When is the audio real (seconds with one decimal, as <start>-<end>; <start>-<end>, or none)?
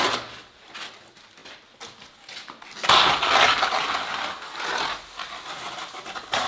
0.0-6.5